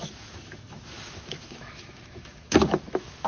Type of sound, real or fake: fake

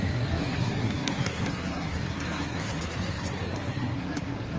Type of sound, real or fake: fake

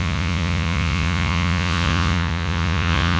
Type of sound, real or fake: fake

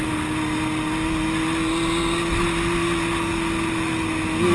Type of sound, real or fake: real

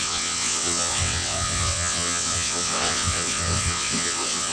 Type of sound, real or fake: fake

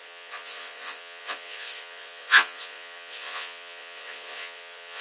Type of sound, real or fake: fake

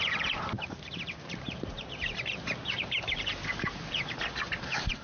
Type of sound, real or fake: fake